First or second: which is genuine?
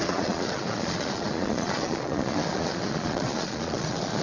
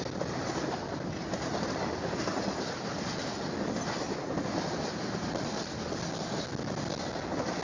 second